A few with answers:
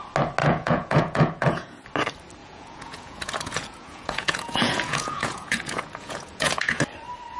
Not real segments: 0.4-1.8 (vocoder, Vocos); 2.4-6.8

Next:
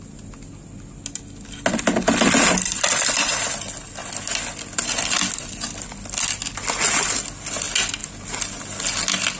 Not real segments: none

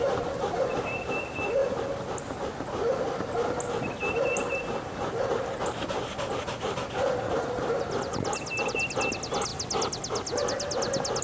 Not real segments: none